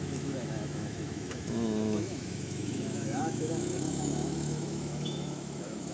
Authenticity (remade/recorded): remade